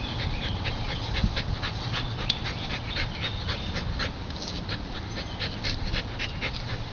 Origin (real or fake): real